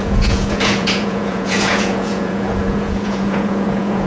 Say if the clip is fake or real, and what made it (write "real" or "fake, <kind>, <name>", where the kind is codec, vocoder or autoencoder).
fake, vocoder, Vocos